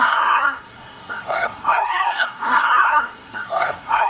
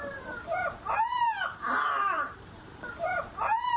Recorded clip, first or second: second